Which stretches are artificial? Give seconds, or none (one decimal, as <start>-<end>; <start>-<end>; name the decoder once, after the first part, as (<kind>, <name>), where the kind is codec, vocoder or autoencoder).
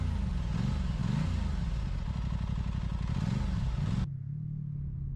none